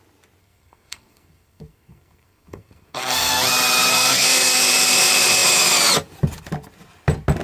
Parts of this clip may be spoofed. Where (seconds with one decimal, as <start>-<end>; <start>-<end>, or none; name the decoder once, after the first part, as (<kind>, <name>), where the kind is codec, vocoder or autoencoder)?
0.4-3.3 (codec, SNAC); 3.9-4.6